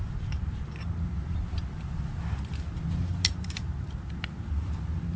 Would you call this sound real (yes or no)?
yes